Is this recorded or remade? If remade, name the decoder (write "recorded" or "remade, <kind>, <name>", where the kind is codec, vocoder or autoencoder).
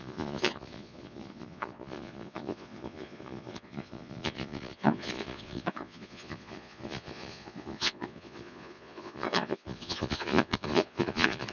remade, vocoder, Vocos